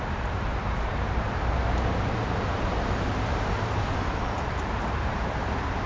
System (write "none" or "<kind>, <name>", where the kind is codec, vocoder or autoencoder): vocoder, BigVGAN v2